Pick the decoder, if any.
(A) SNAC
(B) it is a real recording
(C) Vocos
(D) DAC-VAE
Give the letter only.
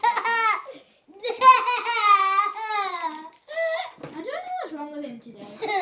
B